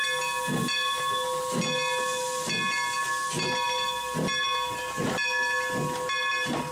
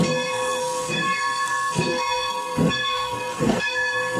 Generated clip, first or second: second